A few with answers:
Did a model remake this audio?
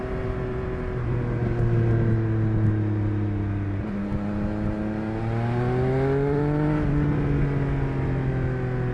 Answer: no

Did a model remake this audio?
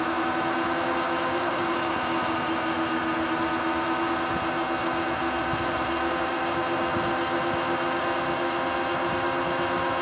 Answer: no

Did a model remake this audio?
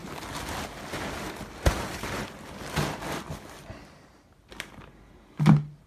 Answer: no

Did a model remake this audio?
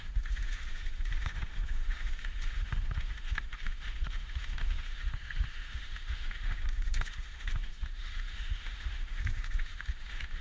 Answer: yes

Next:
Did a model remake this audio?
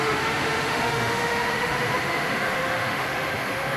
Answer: yes